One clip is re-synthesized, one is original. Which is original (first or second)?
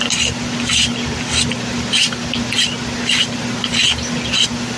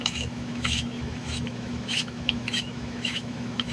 first